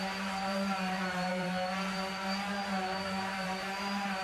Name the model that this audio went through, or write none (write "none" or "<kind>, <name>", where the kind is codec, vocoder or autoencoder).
vocoder, BigVGAN v2